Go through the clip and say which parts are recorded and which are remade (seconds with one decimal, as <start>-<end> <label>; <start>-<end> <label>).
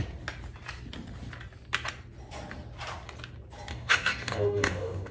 0.0-3.7 recorded; 3.7-5.1 remade